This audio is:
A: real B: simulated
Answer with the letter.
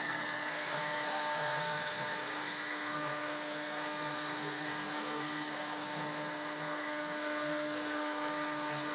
B